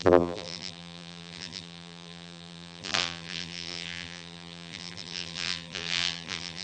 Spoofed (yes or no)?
yes